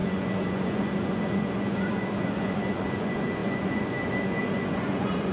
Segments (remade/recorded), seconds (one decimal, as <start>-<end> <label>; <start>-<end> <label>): 0.0-5.3 remade